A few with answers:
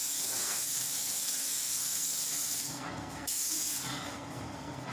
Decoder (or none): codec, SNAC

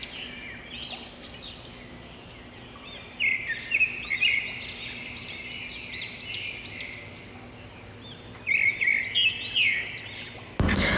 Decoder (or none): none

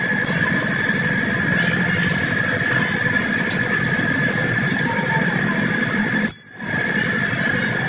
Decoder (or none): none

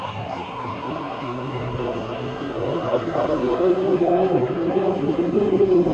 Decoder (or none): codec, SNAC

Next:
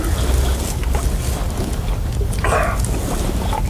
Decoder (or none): none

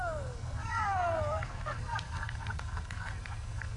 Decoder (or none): codec, SNAC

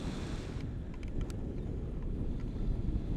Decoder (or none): none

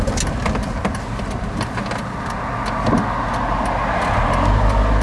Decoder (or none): none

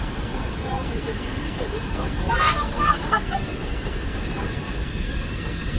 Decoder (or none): codec, SNAC